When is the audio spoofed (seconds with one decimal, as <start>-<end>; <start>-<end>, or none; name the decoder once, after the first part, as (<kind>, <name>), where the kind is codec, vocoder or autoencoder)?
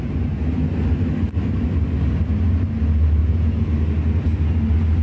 3.2-3.7 (vocoder, Vocos)